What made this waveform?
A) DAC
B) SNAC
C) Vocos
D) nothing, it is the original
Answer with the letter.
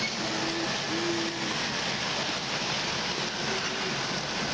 D